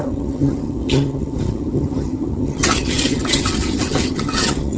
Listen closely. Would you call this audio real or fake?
fake